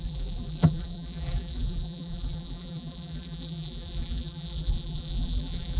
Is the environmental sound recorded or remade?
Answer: remade